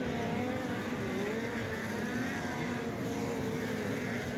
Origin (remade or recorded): recorded